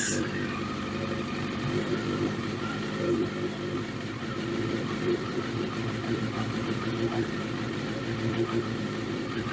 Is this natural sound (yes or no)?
no